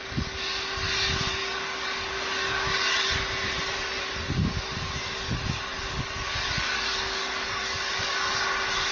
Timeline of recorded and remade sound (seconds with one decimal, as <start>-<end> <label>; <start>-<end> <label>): 0.0-1.3 recorded; 1.3-3.1 remade; 3.1-5.7 recorded; 5.7-8.3 remade; 8.3-8.9 recorded